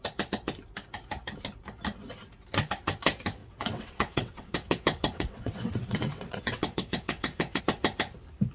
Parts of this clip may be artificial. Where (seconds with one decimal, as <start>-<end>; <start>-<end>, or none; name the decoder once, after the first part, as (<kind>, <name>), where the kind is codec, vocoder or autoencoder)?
3.4-7.6 (vocoder, WaveNeXt)